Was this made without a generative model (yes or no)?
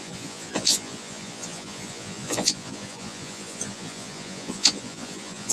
no